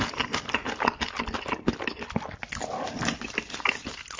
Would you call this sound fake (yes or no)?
no